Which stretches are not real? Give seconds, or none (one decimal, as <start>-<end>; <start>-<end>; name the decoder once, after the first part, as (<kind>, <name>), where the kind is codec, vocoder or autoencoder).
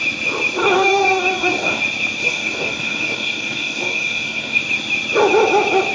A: 0.6-1.8 (codec, DAC); 2.2-4.6